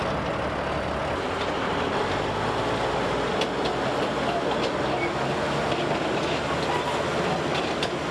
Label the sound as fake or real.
real